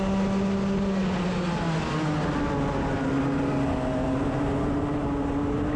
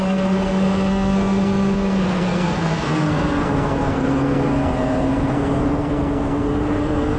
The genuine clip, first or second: first